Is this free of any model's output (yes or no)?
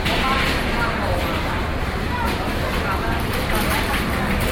no